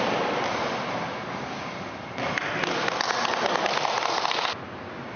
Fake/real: real